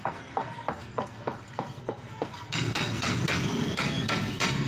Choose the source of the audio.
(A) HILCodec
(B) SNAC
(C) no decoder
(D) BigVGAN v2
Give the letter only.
B